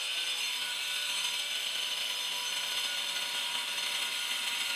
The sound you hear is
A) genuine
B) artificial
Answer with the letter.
A